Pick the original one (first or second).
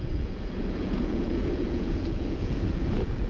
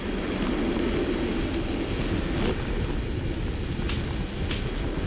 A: second